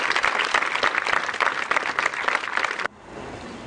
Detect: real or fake real